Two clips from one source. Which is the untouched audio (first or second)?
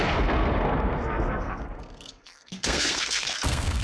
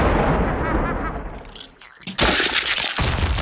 second